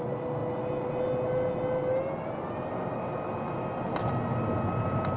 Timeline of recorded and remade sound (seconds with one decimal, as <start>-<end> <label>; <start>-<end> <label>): 0.0-5.2 recorded

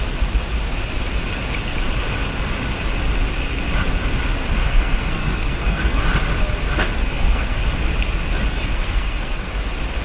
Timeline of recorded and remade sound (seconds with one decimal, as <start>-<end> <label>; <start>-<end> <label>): 0.0-4.6 recorded; 4.6-6.0 remade; 6.0-7.0 recorded; 7.0-7.6 remade; 7.6-8.7 recorded; 8.7-9.5 remade; 9.5-10.0 recorded

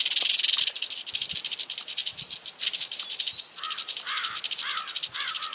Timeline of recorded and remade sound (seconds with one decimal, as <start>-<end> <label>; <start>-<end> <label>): 0.0-5.5 recorded

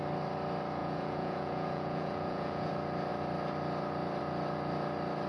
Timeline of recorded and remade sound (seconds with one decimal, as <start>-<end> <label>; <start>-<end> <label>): 0.0-0.8 recorded; 0.8-2.7 remade; 2.7-5.3 recorded

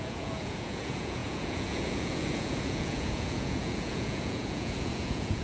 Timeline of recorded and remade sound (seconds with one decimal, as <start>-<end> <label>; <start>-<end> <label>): 0.0-5.4 remade

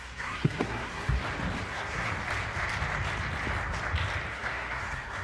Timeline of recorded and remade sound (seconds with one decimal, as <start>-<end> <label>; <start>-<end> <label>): 0.0-1.2 remade; 1.2-1.7 recorded; 1.7-2.1 remade; 2.1-4.3 recorded; 4.3-5.2 remade

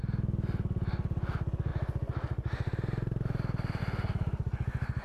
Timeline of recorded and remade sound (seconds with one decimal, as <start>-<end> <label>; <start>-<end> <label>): 0.0-1.7 recorded; 1.7-3.8 remade; 3.8-5.0 recorded